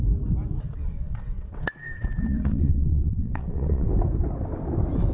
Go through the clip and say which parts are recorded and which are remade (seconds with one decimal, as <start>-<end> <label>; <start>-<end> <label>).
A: 0.0-0.8 recorded; 0.8-3.9 remade; 3.9-5.1 recorded